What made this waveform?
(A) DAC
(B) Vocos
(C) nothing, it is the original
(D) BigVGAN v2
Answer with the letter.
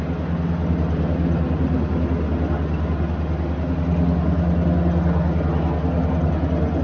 C